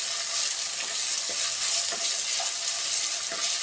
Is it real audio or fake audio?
real